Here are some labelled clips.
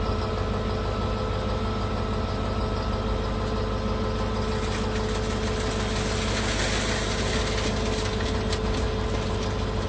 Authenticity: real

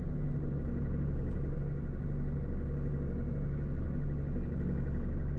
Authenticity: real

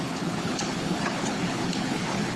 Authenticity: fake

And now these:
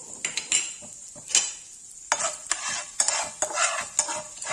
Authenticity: real